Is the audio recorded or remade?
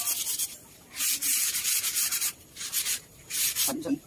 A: remade